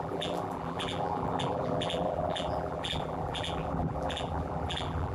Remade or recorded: remade